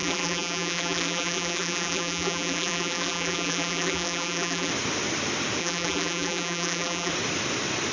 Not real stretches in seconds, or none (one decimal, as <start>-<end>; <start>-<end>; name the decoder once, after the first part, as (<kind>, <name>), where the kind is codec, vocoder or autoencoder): 0.0-4.7 (vocoder, BigVGAN v2); 5.6-7.1